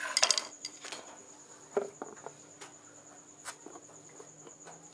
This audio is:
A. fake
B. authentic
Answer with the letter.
B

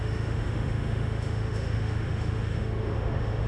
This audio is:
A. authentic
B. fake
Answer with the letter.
B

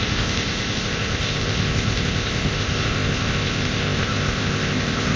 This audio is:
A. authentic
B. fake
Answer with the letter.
B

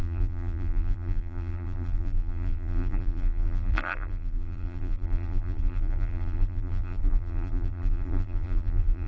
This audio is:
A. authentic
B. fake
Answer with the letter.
B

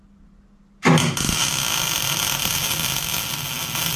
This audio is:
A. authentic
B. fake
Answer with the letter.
A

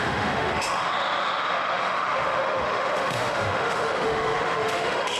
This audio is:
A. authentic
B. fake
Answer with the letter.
B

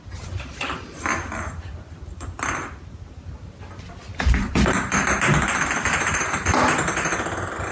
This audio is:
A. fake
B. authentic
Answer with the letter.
B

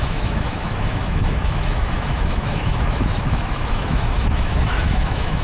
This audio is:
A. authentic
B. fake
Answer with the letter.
B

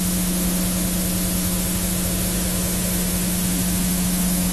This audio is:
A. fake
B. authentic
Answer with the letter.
A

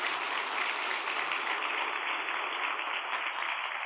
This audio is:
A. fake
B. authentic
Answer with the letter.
B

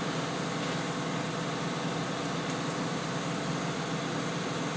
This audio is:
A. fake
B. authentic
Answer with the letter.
B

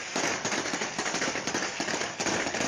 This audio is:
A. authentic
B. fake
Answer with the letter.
B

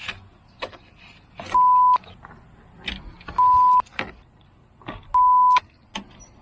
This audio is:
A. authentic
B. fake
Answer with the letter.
A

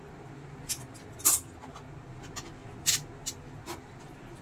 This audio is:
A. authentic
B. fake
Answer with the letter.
A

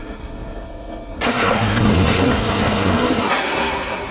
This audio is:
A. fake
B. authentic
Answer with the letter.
A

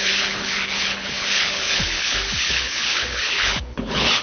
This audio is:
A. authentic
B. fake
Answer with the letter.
B